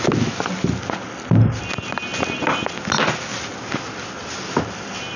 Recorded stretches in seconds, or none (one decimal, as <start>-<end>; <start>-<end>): 0.0-5.2